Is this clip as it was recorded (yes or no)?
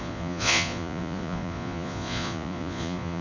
no